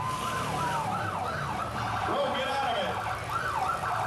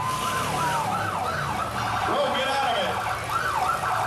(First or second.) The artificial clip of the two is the first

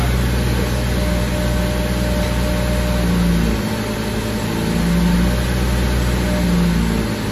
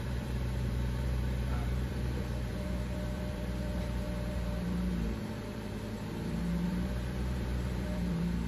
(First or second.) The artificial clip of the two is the second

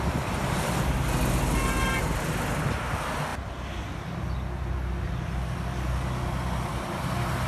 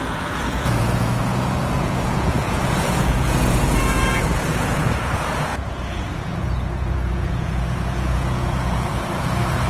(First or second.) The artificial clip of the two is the second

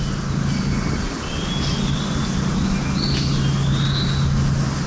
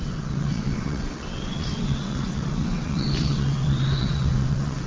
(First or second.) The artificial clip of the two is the second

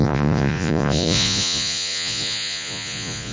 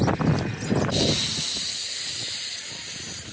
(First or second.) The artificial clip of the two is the first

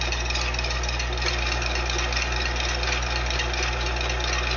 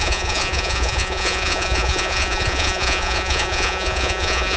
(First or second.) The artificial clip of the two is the second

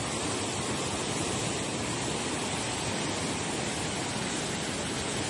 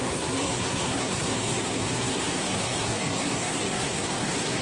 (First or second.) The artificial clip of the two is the second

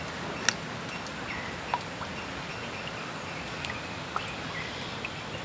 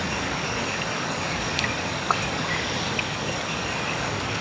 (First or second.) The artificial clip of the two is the second